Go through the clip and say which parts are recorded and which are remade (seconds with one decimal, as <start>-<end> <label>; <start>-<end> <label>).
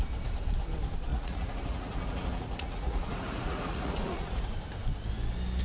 0.0-1.1 recorded; 1.1-4.5 remade; 4.5-5.6 recorded